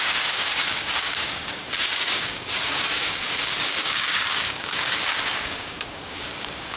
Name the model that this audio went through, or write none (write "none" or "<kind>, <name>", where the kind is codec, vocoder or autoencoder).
codec, DAC